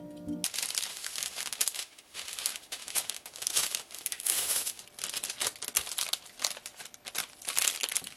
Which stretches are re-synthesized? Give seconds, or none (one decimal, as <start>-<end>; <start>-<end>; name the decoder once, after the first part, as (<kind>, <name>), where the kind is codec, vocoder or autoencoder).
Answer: 0.9-4.8 (autoencoder, DAC-VAE)